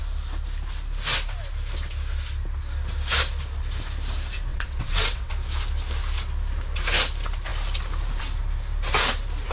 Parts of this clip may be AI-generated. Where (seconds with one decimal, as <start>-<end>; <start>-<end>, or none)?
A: 4.5-5.3